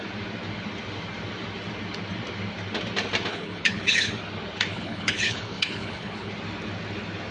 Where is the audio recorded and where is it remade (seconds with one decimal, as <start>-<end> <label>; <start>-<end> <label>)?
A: 0.0-3.3 recorded; 3.3-4.1 remade; 4.1-4.7 recorded; 4.7-6.3 remade; 6.3-7.3 recorded